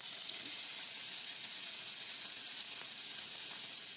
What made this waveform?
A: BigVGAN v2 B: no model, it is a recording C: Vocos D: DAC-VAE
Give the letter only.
C